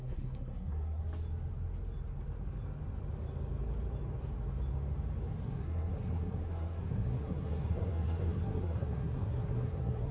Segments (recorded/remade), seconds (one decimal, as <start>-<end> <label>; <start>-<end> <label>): 0.0-1.0 remade; 1.0-5.4 recorded; 5.4-10.1 remade